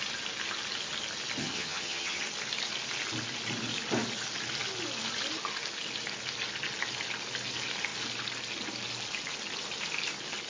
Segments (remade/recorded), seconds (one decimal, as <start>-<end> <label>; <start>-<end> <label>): 0.0-1.4 recorded; 1.4-2.2 remade; 2.2-10.5 recorded